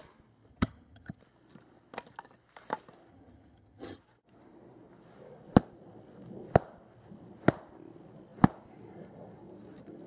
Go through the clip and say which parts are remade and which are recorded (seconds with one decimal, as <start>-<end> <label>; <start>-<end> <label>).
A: 0.0-0.5 recorded; 0.5-1.2 remade; 1.2-3.1 recorded; 3.1-4.0 remade; 4.0-10.1 recorded